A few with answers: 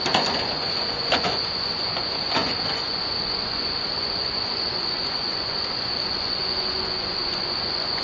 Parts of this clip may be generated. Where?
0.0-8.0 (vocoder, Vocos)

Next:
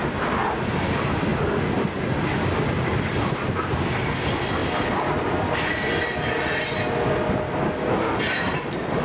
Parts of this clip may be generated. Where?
none

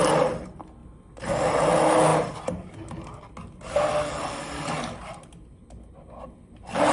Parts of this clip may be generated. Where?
none

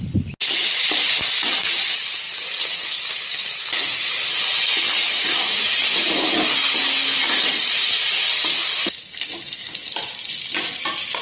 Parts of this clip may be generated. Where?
5.1-6.1 (vocoder, Vocos)

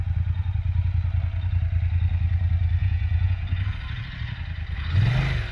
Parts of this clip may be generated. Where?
2.8-3.4 (vocoder, Vocos)

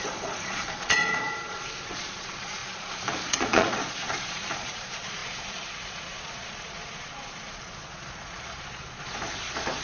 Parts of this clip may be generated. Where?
0.0-9.8 (vocoder, Vocos)